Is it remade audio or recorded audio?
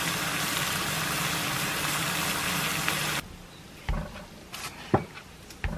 recorded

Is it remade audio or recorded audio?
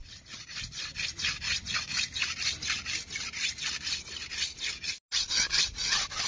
recorded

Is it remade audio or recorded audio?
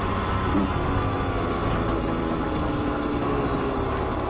recorded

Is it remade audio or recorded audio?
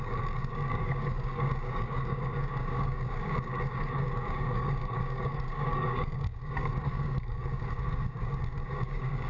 remade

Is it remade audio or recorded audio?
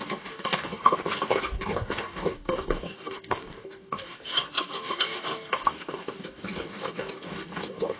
remade